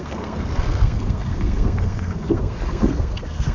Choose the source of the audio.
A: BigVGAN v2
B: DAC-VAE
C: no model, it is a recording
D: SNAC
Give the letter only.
D